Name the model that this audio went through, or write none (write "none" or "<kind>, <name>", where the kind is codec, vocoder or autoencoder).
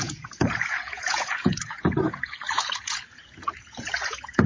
vocoder, Vocos